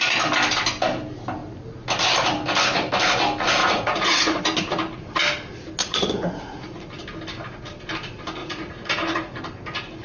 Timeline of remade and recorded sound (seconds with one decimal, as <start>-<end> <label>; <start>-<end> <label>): 0.0-3.6 recorded; 3.6-4.4 remade; 4.4-5.8 recorded; 5.8-6.8 remade; 6.8-8.4 recorded; 8.4-9.4 remade; 9.4-10.0 recorded